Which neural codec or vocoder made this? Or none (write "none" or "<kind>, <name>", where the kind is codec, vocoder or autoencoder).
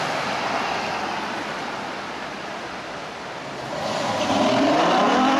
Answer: none